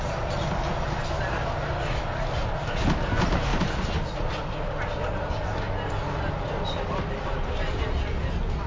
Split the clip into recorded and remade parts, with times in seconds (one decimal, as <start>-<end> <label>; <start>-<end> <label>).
0.0-8.7 recorded